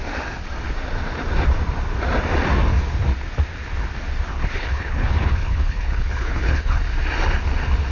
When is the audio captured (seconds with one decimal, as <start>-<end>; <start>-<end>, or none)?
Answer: 0.0-4.3; 6.8-7.9

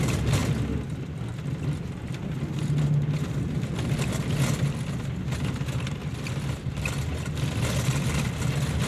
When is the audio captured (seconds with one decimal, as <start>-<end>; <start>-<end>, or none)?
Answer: 0.0-6.0; 6.8-8.9

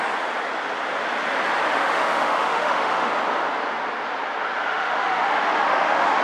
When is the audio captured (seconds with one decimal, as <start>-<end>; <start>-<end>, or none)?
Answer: 0.0-1.7; 3.1-4.7

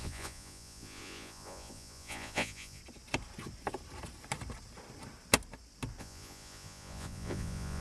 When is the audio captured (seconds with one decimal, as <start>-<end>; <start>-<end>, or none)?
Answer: 2.8-6.0